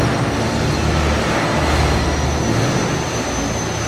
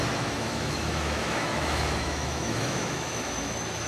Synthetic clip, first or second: second